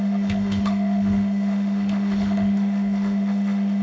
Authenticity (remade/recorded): remade